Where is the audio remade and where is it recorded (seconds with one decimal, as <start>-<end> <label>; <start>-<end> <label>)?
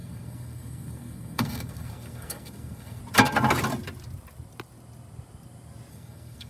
0.0-3.0 remade; 3.0-5.9 recorded; 5.9-6.5 remade